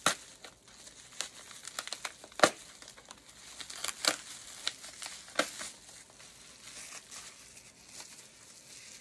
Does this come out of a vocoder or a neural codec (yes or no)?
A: no